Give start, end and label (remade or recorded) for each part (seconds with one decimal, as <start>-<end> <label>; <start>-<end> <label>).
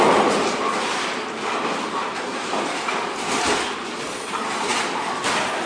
0.0-5.7 remade